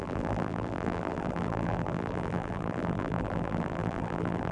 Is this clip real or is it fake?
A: fake